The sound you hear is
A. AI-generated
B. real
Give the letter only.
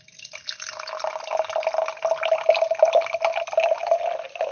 B